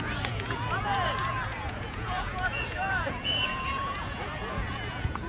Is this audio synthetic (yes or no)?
yes